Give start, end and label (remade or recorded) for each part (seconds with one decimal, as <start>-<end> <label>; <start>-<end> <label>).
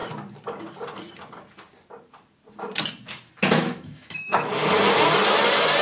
0.0-3.5 recorded; 3.5-4.5 remade; 4.5-5.8 recorded